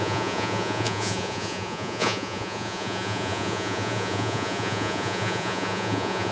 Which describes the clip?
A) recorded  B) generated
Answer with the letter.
B